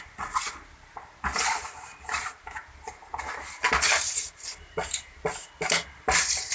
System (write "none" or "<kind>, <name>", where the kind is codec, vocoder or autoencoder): none